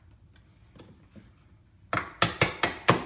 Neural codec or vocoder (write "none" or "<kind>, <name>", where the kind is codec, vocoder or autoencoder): none